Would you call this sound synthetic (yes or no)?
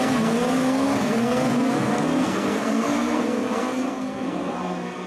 yes